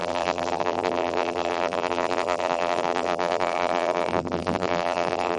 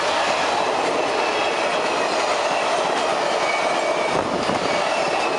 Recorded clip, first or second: second